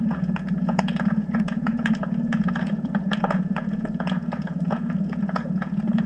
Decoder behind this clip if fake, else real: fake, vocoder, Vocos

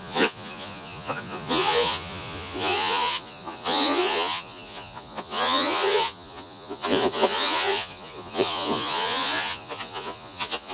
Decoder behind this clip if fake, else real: fake, vocoder, Vocos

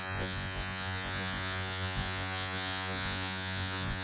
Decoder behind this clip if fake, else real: fake, vocoder, Vocos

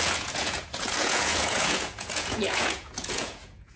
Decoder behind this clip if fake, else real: fake, vocoder, Vocos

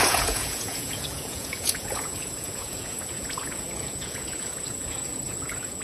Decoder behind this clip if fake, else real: fake, vocoder, Vocos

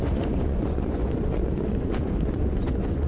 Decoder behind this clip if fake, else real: fake, vocoder, Vocos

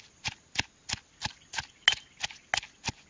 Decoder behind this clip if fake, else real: real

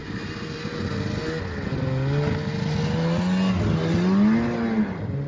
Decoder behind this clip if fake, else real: real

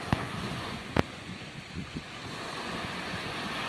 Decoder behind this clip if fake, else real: fake, vocoder, Vocos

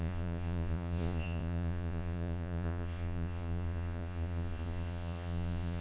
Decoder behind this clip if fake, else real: fake, vocoder, Vocos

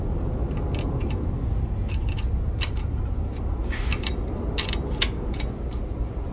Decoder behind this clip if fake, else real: real